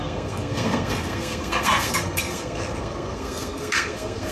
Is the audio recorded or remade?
remade